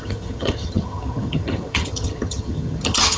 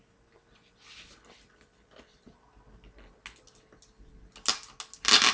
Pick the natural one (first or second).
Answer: second